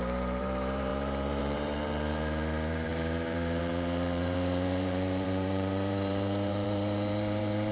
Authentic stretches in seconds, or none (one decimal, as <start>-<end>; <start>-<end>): none